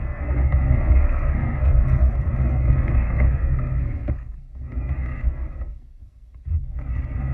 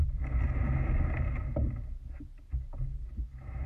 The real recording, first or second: second